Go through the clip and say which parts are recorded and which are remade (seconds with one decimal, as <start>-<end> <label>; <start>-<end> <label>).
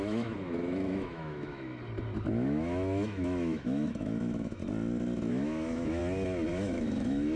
0.0-1.7 remade; 1.7-2.3 recorded; 2.3-4.6 remade; 4.6-5.3 recorded; 5.3-6.0 remade; 6.0-6.5 recorded; 6.5-7.4 remade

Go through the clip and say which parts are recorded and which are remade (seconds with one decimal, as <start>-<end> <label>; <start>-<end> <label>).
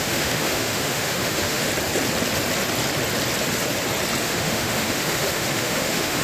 0.0-1.7 remade; 1.7-4.2 recorded; 4.2-6.2 remade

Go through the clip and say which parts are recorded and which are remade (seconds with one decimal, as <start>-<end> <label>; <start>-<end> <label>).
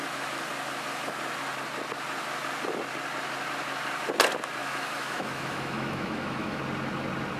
0.0-4.6 recorded; 4.6-6.6 remade; 6.6-7.4 recorded